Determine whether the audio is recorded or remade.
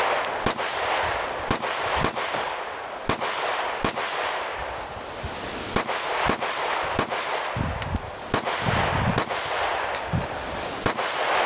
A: recorded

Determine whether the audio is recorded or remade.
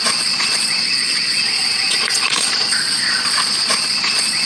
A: remade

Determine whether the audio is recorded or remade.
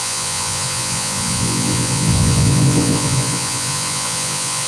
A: remade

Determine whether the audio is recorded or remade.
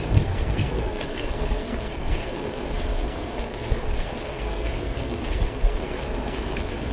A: remade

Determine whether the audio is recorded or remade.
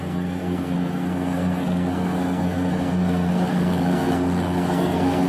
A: remade